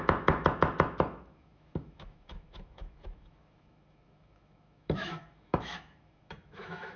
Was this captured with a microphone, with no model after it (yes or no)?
no